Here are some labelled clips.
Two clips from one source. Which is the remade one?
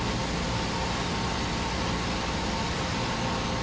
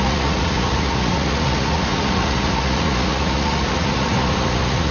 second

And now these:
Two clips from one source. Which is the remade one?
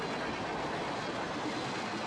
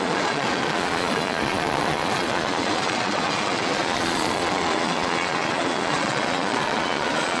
second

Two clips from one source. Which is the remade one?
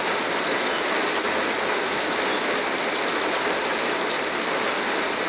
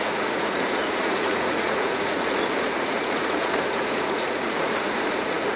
second